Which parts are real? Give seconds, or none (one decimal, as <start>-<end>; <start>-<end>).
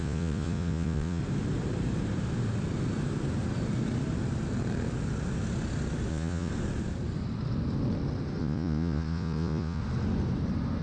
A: 1.2-6.1; 6.5-8.4; 9.8-10.8